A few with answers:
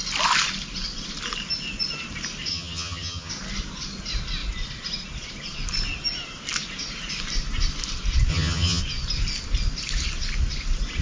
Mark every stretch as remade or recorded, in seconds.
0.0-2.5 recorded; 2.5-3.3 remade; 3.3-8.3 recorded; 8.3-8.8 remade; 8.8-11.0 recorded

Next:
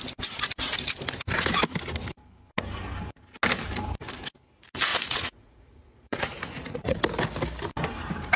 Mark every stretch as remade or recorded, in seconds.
0.0-4.9 recorded; 4.9-7.0 remade; 7.0-8.4 recorded

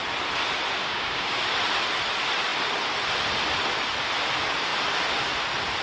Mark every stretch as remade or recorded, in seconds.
0.0-0.8 recorded; 0.8-1.4 remade; 1.4-5.8 recorded

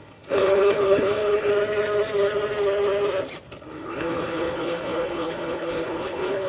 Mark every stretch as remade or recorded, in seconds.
0.0-1.5 remade; 1.5-3.6 recorded; 3.6-6.5 remade